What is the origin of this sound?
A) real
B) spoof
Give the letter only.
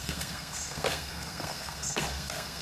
B